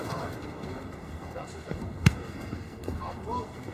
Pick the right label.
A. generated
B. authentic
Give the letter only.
A